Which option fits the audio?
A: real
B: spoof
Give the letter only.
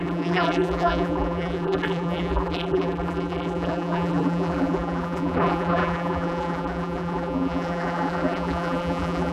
B